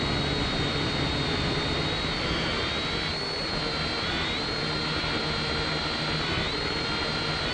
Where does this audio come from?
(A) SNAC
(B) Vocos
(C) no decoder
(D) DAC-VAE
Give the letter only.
C